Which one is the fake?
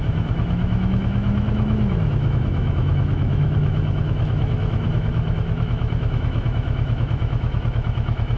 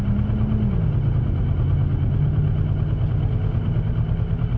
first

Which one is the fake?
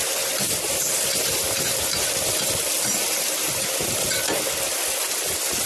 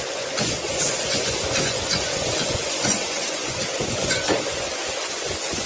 second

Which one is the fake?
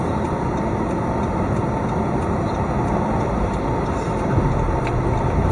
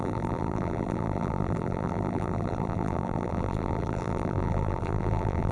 second